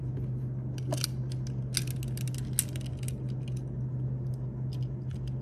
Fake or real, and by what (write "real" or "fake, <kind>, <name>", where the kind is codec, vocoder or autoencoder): real